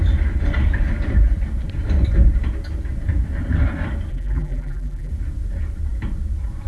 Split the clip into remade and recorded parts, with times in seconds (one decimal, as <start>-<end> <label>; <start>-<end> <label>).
0.0-4.1 recorded; 4.1-5.1 remade; 5.1-6.7 recorded